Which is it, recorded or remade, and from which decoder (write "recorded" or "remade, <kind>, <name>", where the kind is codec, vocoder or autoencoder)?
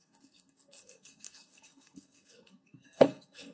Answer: remade, codec, SNAC